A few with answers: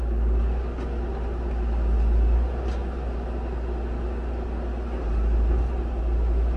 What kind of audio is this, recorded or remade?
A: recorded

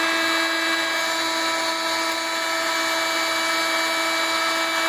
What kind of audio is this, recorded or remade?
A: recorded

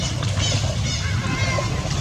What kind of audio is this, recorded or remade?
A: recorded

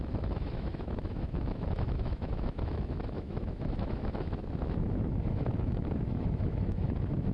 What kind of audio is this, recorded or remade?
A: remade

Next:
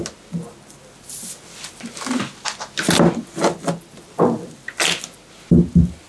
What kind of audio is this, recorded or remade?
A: recorded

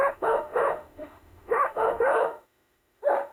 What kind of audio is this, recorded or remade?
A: remade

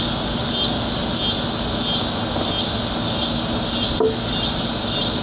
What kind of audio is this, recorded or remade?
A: recorded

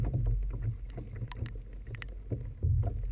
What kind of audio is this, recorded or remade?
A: recorded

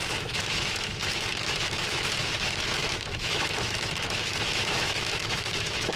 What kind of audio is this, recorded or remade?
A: remade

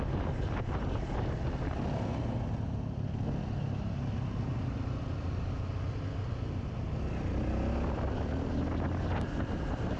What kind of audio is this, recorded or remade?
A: recorded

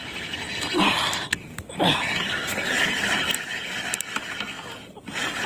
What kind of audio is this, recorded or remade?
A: recorded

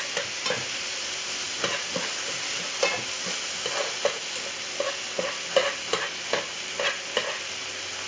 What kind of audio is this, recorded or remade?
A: recorded